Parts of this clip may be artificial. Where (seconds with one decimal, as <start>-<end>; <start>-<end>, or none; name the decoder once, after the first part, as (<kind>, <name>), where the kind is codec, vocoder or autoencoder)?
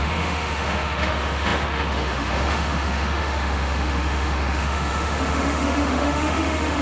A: 0.0-6.8 (autoencoder, DAC-VAE)